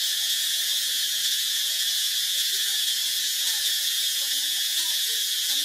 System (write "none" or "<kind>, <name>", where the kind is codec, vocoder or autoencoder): vocoder, Vocos